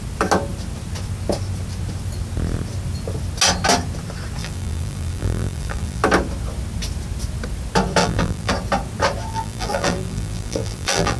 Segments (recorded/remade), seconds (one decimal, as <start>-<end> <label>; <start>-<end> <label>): 0.0-4.4 recorded; 4.4-6.0 remade; 6.0-8.0 recorded; 8.0-8.5 remade; 8.5-9.3 recorded; 9.3-11.2 remade